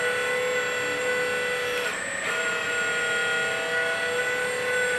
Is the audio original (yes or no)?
yes